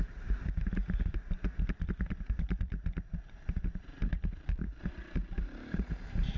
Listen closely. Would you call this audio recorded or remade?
remade